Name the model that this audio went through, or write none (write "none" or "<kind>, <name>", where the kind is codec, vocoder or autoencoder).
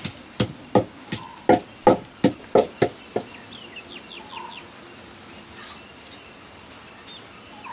none